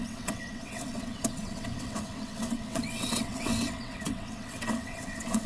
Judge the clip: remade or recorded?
remade